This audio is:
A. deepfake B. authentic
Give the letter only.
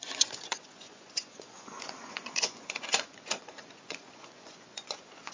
A